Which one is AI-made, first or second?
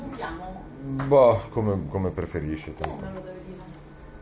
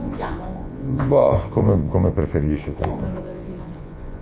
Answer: second